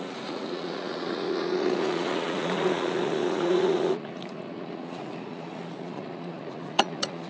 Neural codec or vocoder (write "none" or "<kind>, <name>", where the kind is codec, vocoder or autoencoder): vocoder, Vocos